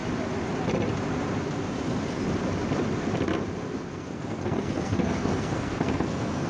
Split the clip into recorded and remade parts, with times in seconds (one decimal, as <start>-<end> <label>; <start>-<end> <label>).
0.0-3.9 recorded; 3.9-6.5 remade